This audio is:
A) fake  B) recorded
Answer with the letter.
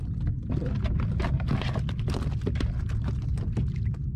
B